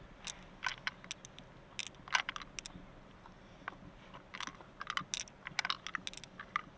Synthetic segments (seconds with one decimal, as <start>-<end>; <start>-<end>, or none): none